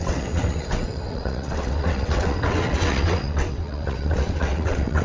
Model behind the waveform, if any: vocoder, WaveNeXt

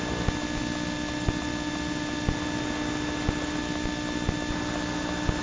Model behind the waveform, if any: none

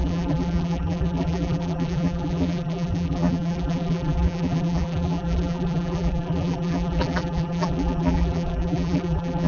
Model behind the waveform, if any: vocoder, BigVGAN v2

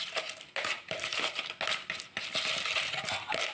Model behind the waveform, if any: none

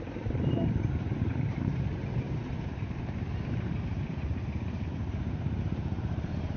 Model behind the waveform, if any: vocoder, BigVGAN v2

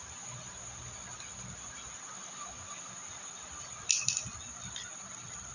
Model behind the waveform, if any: none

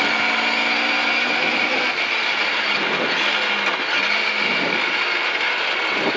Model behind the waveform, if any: none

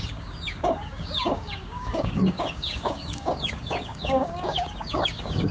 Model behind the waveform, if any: codec, DAC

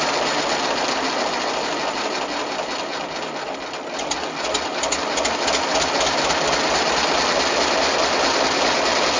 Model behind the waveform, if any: none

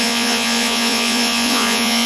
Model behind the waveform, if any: vocoder, Vocos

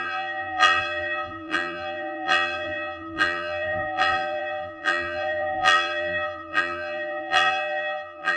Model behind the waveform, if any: vocoder, BigVGAN v2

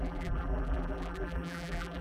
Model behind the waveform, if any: vocoder, BigVGAN v2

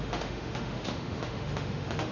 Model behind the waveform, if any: autoencoder, DAC-VAE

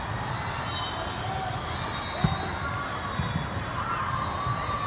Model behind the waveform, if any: none